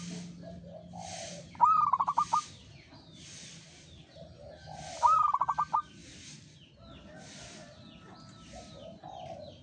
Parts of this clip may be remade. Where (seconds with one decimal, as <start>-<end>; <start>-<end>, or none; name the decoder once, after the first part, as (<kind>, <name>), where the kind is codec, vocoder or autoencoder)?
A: none